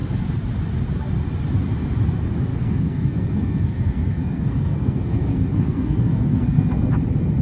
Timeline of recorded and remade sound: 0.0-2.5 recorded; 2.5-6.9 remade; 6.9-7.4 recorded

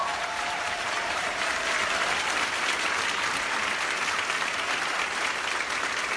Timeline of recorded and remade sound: 0.0-1.7 remade; 1.7-6.2 recorded